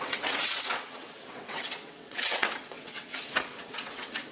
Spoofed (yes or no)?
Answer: yes